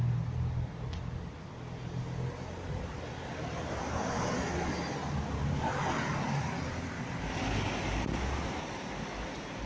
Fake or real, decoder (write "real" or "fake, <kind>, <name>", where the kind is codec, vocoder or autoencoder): real